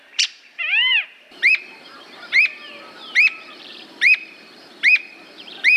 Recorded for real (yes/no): no